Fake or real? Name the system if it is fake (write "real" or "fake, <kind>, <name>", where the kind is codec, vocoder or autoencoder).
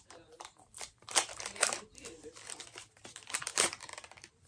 fake, vocoder, BigVGAN v2